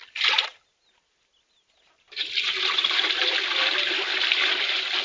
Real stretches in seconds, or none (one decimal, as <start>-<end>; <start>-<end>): 0.0-5.0